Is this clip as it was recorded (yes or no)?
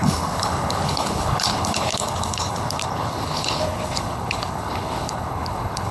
no